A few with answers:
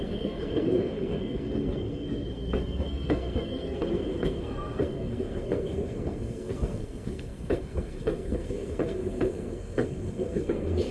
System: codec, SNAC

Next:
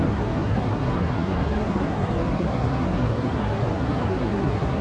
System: codec, SNAC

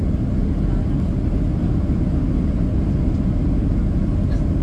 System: none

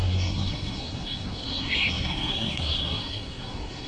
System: codec, SNAC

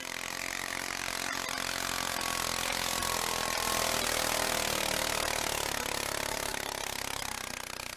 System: none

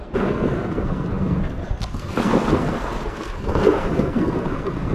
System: codec, SNAC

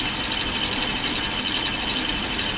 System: none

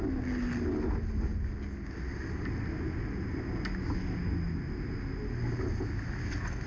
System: none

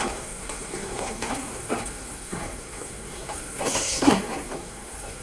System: codec, SNAC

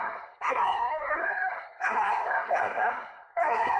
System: codec, SNAC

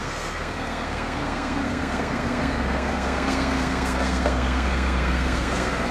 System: codec, SNAC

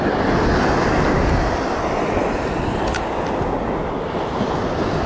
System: none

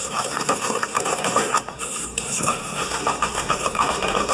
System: codec, SNAC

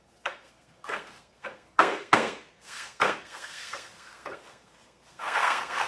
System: codec, SNAC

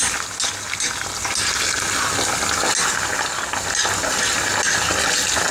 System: none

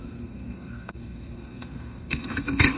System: codec, SNAC